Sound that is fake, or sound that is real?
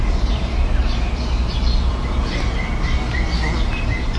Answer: real